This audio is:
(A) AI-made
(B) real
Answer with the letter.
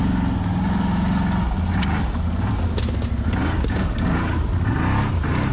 B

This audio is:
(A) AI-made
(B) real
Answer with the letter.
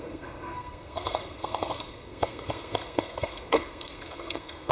A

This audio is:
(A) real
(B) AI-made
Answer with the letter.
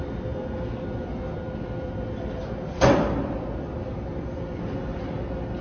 A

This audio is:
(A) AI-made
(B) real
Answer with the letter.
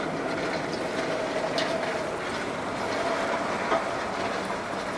B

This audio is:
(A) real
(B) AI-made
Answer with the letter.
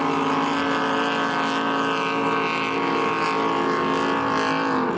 A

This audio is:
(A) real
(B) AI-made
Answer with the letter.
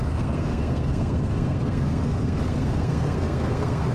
B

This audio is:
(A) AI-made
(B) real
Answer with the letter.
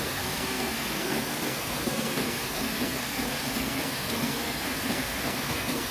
A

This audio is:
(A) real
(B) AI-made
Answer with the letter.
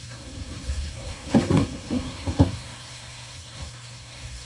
B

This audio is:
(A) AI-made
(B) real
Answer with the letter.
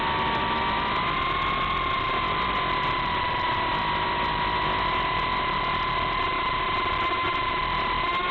B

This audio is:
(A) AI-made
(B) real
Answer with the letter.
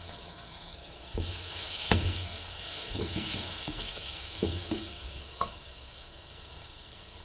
A